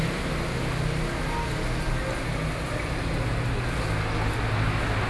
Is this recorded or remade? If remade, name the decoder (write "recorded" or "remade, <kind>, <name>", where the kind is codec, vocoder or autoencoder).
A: recorded